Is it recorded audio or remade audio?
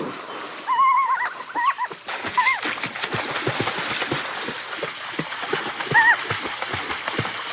recorded